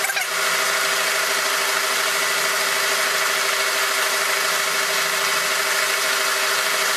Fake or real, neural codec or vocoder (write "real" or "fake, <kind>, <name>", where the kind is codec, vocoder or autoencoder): real